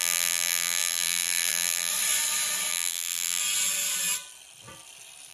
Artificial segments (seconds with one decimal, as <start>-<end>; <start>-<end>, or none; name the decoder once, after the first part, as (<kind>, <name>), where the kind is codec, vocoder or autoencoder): 0.0-1.9 (vocoder, BigVGAN v2); 2.7-3.4